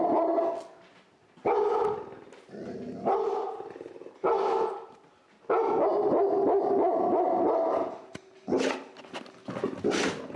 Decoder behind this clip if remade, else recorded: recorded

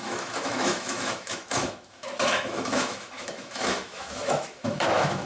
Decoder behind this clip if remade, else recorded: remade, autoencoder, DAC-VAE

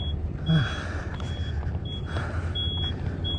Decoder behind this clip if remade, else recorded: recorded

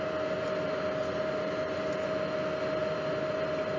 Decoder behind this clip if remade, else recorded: recorded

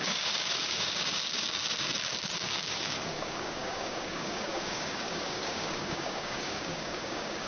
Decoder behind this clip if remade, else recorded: remade, codec, DAC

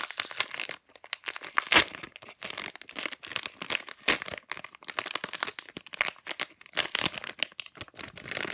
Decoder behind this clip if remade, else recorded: recorded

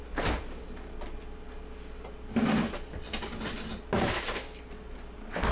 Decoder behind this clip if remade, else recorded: recorded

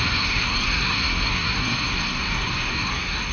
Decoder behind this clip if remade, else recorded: remade, codec, SNAC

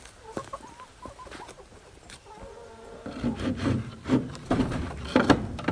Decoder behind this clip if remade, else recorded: recorded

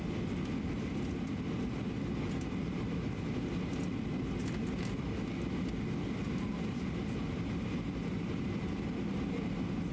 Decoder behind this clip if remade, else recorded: recorded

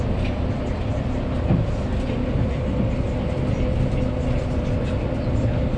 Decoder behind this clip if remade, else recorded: recorded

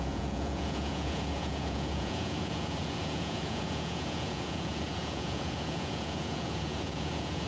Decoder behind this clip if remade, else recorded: remade, vocoder, Vocos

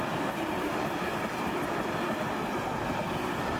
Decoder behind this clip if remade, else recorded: recorded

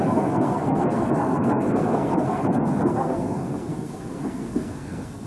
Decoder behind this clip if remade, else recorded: remade, codec, SNAC